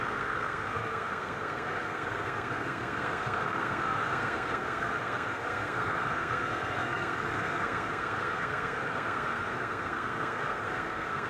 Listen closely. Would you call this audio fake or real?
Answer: fake